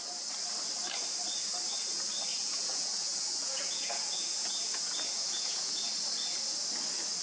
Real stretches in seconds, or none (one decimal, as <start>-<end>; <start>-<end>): 0.0-2.3; 5.9-7.2